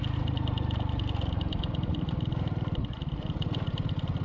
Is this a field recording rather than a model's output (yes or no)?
yes